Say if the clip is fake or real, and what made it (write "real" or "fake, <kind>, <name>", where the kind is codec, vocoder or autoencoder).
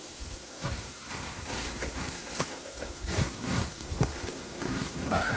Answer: fake, codec, SNAC